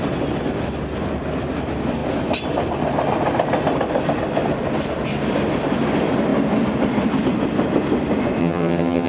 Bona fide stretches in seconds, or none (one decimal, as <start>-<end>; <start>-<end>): 0.0-8.4